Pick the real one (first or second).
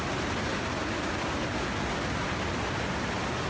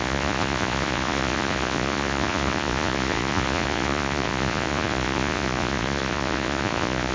first